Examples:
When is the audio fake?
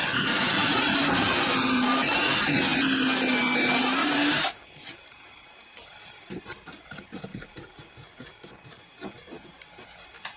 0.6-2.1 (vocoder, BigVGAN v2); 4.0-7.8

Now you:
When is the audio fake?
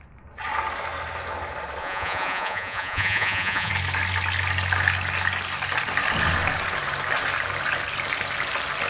1.8-3.7 (vocoder, Vocos)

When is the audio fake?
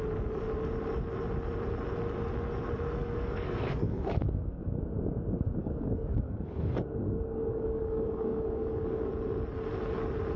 3.0-4.8 (codec, DAC); 5.6-9.1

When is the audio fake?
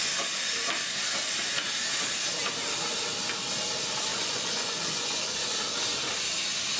4.1-5.5 (vocoder, Vocos)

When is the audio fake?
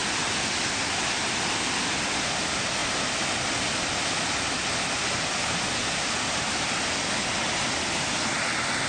none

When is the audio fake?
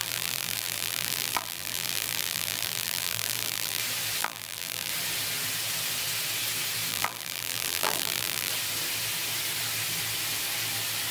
0.0-3.8 (vocoder, BigVGAN v2); 4.2-4.9; 6.9-8.5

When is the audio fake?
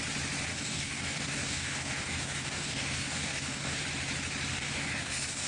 0.5-3.8 (codec, DAC); 4.5-5.5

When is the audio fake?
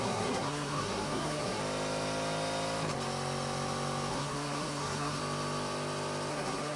0.0-1.6 (codec, SNAC); 4.1-5.2; 6.3-6.8